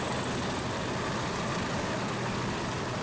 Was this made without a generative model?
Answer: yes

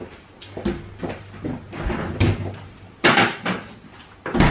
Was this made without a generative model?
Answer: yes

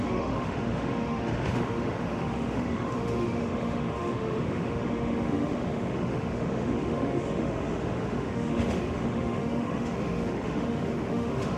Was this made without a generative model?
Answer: no